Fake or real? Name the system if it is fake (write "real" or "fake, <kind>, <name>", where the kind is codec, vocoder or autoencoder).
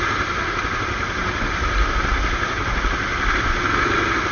real